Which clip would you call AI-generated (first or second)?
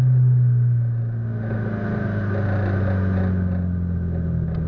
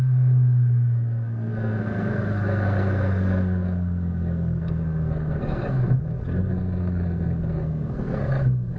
second